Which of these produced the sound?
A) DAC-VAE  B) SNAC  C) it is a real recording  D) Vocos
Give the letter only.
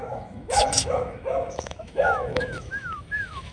A